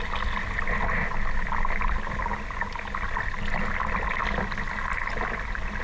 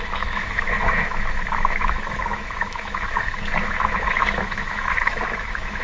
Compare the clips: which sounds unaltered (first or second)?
first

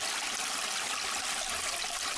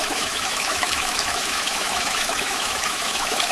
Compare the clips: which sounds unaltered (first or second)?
first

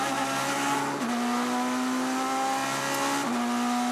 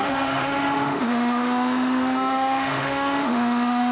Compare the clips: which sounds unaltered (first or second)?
first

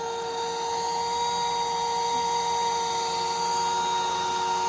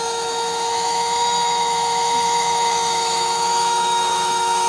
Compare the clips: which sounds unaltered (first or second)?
first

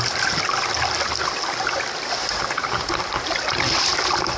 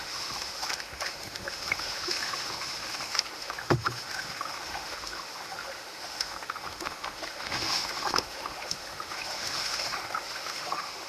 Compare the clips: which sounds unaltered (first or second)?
first